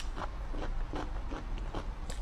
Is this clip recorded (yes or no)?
yes